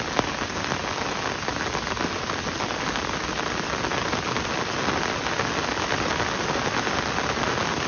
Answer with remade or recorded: recorded